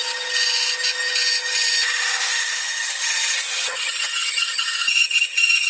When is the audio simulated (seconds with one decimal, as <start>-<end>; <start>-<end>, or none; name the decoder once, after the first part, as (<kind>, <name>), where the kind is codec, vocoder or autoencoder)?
2.6-5.7 (vocoder, HiFi-GAN)